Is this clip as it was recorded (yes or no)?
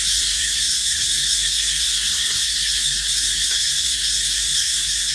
no